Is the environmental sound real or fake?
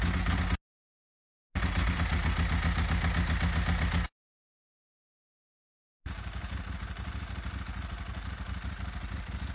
real